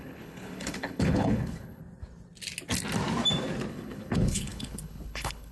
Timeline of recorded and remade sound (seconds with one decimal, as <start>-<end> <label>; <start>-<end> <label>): 0.0-1.8 remade; 1.8-3.7 recorded; 3.7-5.5 remade